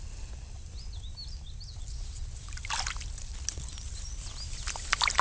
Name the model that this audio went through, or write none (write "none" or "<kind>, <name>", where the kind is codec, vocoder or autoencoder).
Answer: none